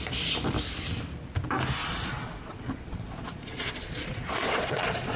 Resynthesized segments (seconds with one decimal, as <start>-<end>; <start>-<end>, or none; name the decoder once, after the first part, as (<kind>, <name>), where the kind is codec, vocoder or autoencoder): 1.8-5.2 (vocoder, Vocos)